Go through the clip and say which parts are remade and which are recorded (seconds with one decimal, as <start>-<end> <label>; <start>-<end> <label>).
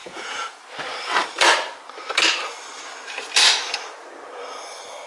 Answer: 0.0-0.6 remade; 0.6-5.1 recorded